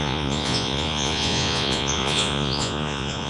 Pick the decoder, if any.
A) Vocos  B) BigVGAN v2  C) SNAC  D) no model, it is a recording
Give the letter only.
A